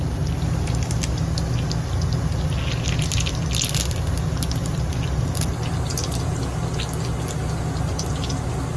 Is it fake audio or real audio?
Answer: real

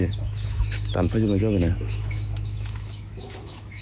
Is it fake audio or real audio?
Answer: fake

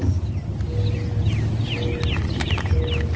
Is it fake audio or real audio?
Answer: real